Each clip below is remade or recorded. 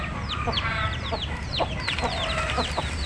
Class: remade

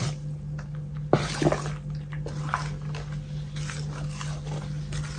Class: recorded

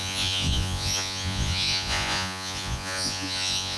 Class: remade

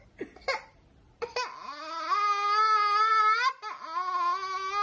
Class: recorded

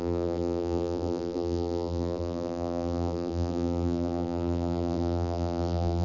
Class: remade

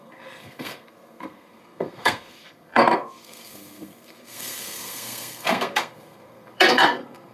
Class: remade